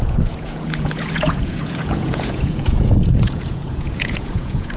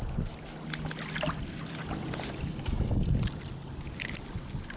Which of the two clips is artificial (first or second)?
first